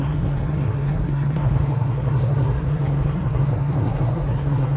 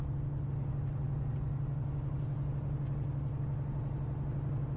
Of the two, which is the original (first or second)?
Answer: second